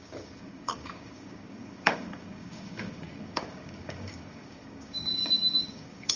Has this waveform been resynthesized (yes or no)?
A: yes